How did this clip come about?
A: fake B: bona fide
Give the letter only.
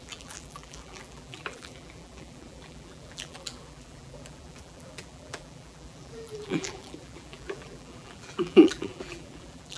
A